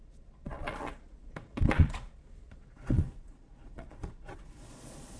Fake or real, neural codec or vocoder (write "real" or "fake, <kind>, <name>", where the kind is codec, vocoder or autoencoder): fake, vocoder, Vocos